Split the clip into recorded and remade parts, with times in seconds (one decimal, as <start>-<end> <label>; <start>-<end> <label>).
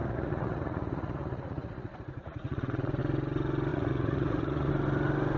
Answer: 0.0-3.0 remade; 3.0-3.7 recorded; 3.7-4.7 remade; 4.7-5.4 recorded